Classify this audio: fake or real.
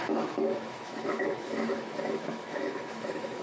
fake